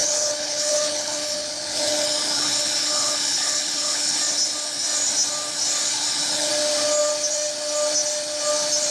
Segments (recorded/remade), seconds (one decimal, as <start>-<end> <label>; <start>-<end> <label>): 0.0-4.2 remade; 4.2-5.8 recorded; 5.8-6.5 remade; 6.5-8.9 recorded